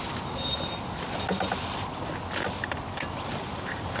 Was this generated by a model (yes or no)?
no